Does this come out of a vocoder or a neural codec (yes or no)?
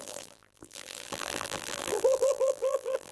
yes